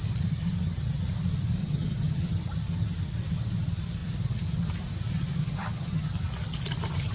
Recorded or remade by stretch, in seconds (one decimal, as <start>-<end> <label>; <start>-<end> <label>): 0.0-1.6 recorded; 1.6-2.3 remade; 2.3-5.4 recorded; 5.4-6.1 remade; 6.1-7.1 recorded